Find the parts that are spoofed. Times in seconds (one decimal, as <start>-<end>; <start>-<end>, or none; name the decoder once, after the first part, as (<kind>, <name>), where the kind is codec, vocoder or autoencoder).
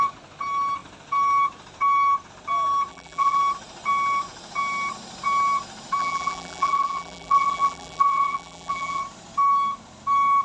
2.9-3.4 (vocoder, BigVGAN v2); 6.0-9.0